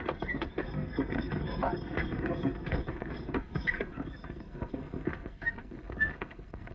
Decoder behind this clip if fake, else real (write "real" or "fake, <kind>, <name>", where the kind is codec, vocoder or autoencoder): fake, codec, SNAC